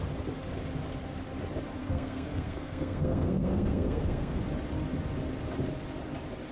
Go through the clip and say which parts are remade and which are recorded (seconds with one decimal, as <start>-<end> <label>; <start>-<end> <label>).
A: 0.0-1.8 recorded; 1.8-4.4 remade; 4.4-6.5 recorded